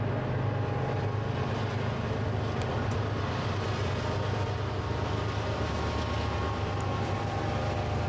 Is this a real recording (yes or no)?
yes